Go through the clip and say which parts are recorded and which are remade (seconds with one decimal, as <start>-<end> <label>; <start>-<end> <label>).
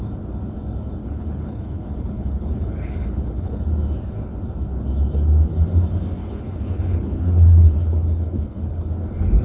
0.0-1.0 recorded; 1.0-3.5 remade; 3.5-6.2 recorded; 6.2-8.9 remade; 8.9-9.4 recorded